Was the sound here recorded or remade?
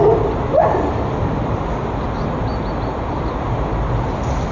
remade